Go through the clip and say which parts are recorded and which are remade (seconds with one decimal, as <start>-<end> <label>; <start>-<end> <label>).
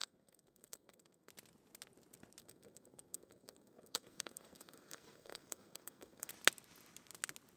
0.0-1.3 remade; 1.3-2.4 recorded; 2.4-6.3 remade; 6.3-7.6 recorded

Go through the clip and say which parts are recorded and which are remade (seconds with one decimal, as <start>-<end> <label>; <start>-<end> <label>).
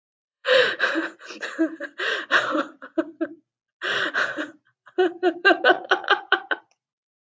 0.0-1.7 remade; 1.7-4.1 recorded; 4.1-7.2 remade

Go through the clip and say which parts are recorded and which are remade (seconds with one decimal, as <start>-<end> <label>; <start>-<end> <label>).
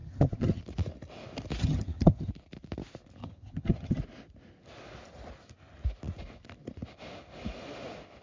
0.0-0.6 remade; 0.6-1.6 recorded; 1.6-2.3 remade; 2.3-3.2 recorded; 3.2-4.0 remade; 4.0-8.2 recorded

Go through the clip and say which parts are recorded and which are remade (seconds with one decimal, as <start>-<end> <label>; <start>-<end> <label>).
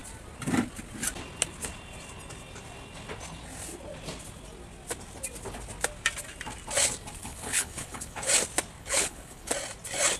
0.0-7.2 recorded; 7.2-8.3 remade; 8.3-8.8 recorded; 8.8-9.5 remade; 9.5-10.2 recorded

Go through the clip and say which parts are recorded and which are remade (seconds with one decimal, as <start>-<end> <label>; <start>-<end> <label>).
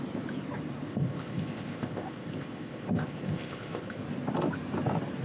0.0-0.9 recorded; 0.9-4.0 remade; 4.0-5.2 recorded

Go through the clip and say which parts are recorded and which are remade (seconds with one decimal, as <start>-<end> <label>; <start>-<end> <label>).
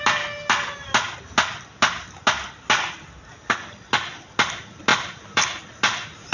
0.0-4.9 recorded; 4.9-5.6 remade; 5.6-6.3 recorded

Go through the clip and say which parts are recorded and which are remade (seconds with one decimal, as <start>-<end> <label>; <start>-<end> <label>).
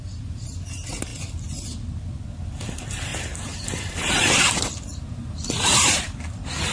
0.0-3.1 recorded; 3.1-6.7 remade